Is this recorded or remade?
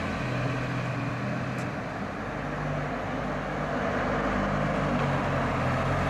recorded